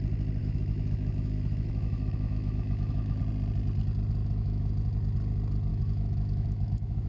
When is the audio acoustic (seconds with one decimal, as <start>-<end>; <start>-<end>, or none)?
0.0-0.4; 3.2-4.2; 4.7-5.7